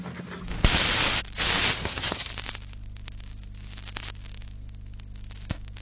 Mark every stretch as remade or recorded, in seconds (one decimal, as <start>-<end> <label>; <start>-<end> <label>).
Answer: 0.0-1.8 recorded; 1.8-2.3 remade; 2.3-5.8 recorded